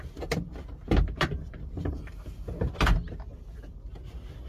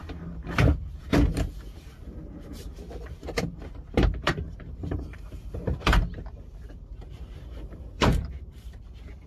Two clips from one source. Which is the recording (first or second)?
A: first